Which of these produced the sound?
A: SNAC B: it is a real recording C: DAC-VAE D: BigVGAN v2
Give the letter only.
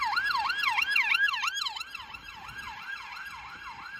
B